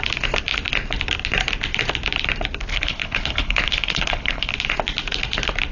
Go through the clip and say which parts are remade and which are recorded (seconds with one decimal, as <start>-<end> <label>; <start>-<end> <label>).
0.0-2.7 recorded; 2.7-4.5 remade; 4.5-5.7 recorded